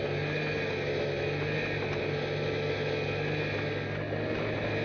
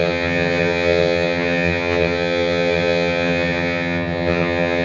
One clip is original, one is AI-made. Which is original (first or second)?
first